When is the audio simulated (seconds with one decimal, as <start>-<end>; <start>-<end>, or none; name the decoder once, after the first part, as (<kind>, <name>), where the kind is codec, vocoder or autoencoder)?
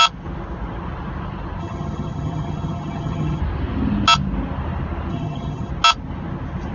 1.6-3.4 (vocoder, HiFi-GAN); 5.1-5.7